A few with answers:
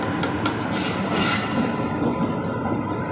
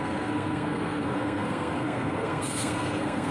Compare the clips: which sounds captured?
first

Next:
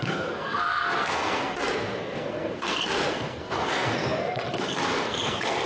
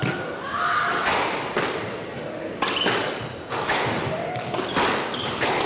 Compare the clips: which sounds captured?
second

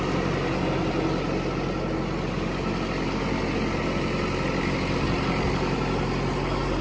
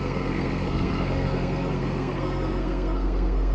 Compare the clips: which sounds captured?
first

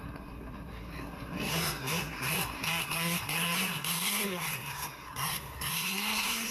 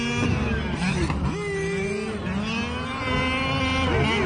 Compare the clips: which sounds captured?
second